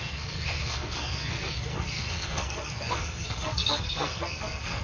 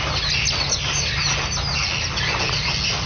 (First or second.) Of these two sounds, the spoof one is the first